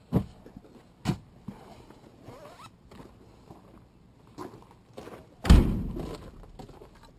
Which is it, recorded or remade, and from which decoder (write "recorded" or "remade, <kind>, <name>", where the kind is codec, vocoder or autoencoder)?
recorded